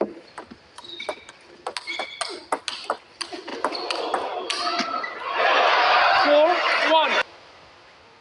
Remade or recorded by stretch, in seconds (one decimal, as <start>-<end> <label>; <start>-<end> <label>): 0.0-8.2 recorded